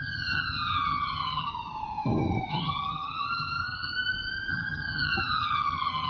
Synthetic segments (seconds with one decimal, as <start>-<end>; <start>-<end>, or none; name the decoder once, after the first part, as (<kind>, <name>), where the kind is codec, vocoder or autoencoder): 0.0-1.5 (vocoder, HiFi-GAN); 2.5-3.9; 4.5-6.1